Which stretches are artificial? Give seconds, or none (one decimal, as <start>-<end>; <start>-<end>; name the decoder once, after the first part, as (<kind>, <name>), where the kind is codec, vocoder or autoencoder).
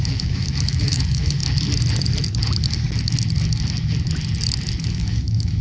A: 0.0-1.4 (autoencoder, DAC-VAE); 4.8-5.6